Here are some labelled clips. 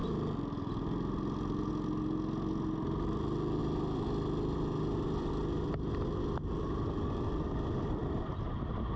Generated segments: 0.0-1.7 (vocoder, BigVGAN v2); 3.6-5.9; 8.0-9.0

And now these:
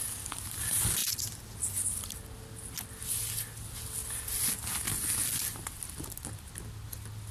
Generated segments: none